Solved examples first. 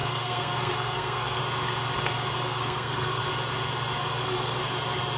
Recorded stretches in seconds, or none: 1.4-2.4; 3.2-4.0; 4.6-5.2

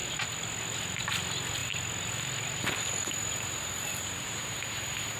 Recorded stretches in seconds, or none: 1.0-5.2